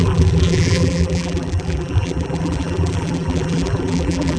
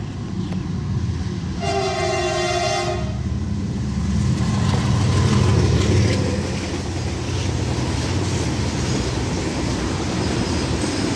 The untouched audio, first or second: second